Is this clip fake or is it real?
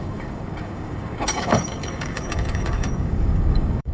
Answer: fake